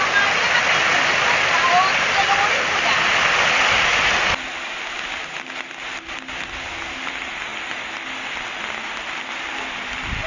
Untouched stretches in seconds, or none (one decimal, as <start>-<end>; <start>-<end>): 0.0-10.3